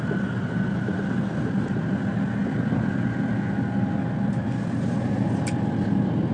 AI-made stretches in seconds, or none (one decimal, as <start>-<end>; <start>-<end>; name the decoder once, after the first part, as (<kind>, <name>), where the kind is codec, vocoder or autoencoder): none